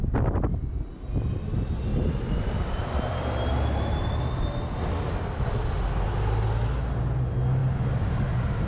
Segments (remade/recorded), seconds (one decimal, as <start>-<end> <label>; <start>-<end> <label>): 0.0-1.9 recorded; 1.9-4.2 remade; 4.2-8.7 recorded

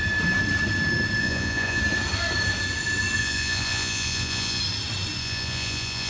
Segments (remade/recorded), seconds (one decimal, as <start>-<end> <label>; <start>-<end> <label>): 0.0-1.2 recorded; 1.2-1.8 remade; 1.8-3.2 recorded; 3.2-4.6 remade; 4.6-5.2 recorded; 5.2-6.1 remade

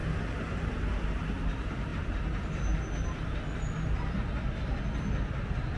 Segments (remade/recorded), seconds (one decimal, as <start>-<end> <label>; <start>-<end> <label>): 0.0-5.8 recorded

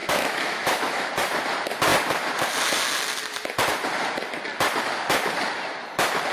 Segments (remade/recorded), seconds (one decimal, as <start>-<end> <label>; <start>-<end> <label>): 0.0-1.1 remade; 1.1-6.3 recorded

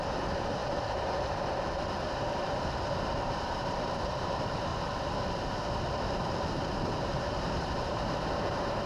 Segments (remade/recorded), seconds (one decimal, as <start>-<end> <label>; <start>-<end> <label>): 0.0-4.7 remade; 4.7-7.4 recorded; 7.4-8.9 remade

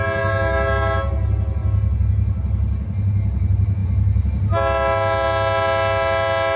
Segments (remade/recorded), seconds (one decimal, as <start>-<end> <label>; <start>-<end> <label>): 0.0-6.6 recorded

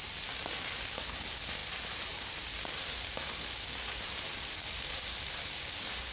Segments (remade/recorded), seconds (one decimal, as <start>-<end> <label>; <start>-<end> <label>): 0.0-6.1 recorded

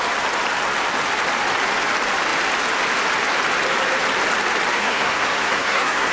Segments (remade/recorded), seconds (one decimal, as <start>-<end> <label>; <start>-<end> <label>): 0.0-4.8 recorded; 4.8-6.1 remade